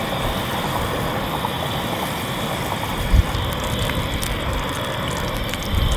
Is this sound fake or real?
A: real